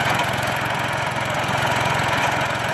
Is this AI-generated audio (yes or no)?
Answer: yes